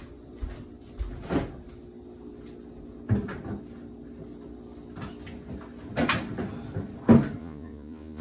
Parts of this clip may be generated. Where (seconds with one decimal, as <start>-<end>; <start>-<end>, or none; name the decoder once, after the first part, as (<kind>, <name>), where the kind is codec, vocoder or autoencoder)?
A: 7.4-8.2 (vocoder, Vocos)